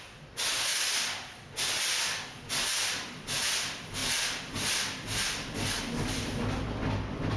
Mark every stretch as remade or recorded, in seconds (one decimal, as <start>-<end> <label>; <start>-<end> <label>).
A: 0.0-7.4 recorded